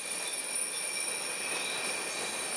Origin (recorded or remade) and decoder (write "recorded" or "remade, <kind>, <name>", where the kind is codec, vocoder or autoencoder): recorded